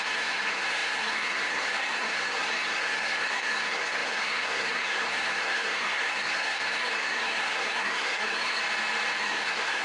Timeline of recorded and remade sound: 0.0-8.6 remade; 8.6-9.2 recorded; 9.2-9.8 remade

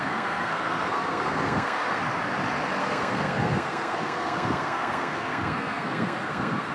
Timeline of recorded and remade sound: 0.0-2.1 remade; 2.1-2.8 recorded; 2.8-6.7 remade